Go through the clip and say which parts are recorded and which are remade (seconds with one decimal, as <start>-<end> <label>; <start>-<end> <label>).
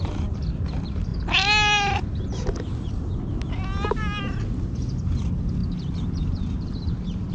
0.0-5.6 recorded; 5.6-7.3 remade